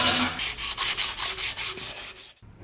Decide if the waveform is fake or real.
real